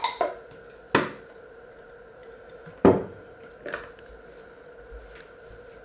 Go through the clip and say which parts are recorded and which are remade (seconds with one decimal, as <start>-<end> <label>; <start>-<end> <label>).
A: 0.0-2.2 recorded; 2.2-3.5 remade; 3.5-5.8 recorded